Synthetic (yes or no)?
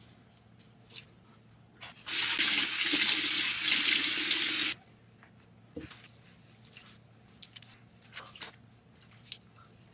no